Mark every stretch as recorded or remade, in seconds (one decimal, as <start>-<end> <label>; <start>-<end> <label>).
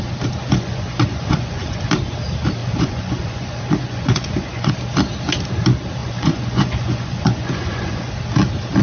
0.0-0.4 recorded; 0.4-1.9 remade; 1.9-2.6 recorded; 2.6-4.7 remade; 4.7-6.0 recorded; 6.0-8.1 remade; 8.1-8.8 recorded